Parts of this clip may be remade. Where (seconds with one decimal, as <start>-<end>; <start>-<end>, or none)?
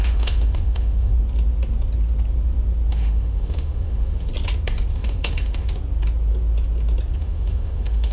0.0-1.1; 2.9-4.3; 4.9-5.8; 7.2-8.1